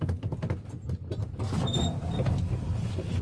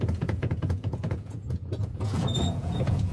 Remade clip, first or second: second